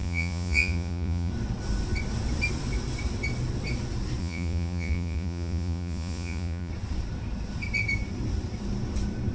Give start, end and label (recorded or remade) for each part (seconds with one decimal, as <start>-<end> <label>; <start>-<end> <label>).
0.0-1.3 remade; 1.3-4.2 recorded; 4.2-6.7 remade; 6.7-9.3 recorded